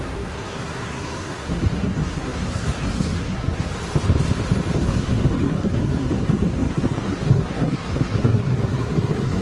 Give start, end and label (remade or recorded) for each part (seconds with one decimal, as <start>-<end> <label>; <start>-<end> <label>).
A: 0.0-3.7 remade; 3.7-4.8 recorded; 4.8-9.4 remade